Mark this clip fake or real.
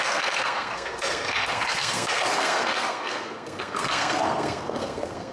fake